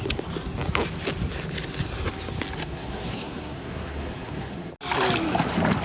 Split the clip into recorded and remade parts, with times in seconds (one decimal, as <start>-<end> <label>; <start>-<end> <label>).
0.0-2.6 recorded; 2.6-4.7 remade; 4.7-5.8 recorded